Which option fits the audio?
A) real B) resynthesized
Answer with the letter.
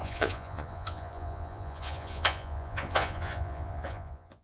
B